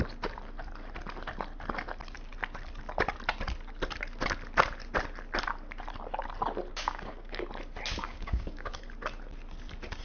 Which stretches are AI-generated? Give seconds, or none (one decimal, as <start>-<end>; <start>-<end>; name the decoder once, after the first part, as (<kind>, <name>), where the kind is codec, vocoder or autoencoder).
6.7-7.4 (codec, DAC); 8.0-8.8